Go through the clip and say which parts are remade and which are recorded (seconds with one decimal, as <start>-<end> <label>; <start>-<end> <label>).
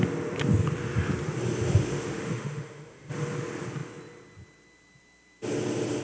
0.0-1.8 recorded; 1.8-3.1 remade; 3.1-6.0 recorded